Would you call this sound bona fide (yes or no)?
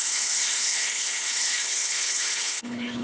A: no